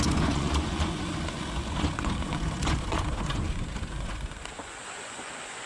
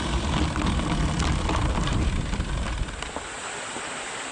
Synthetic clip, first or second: first